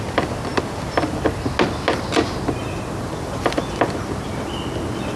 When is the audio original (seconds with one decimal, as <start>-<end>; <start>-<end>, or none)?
0.0-5.2